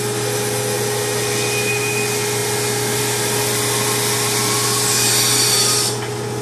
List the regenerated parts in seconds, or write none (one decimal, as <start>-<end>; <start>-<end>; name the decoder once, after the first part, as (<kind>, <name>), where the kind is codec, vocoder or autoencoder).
none